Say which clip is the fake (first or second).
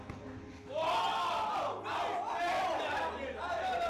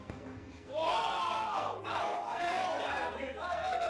second